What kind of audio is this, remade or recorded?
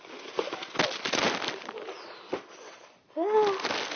recorded